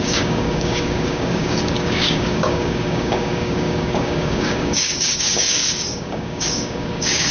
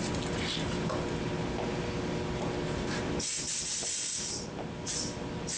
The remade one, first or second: first